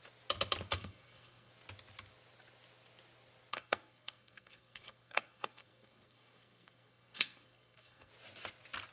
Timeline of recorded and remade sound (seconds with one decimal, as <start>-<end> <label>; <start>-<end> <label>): 0.0-0.7 recorded; 0.7-1.5 remade; 1.5-3.5 recorded; 3.5-8.1 remade; 8.1-8.9 recorded